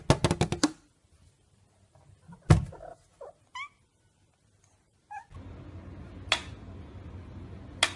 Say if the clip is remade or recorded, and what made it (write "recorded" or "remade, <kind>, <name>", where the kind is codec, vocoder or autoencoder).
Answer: recorded